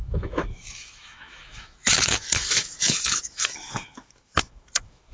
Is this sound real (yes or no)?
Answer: no